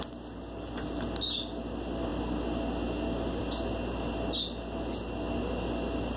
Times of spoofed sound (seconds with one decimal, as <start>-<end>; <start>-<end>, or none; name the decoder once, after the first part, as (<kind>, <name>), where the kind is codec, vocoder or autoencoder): none